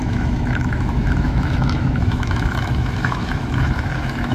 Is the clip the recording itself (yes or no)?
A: no